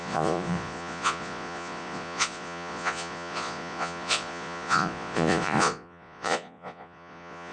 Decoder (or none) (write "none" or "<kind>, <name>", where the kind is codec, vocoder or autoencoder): vocoder, Vocos